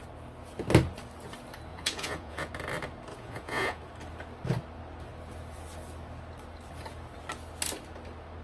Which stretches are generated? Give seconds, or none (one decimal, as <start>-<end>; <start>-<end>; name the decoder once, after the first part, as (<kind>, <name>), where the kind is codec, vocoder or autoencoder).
1.7-2.5 (vocoder, Vocos); 3.1-3.8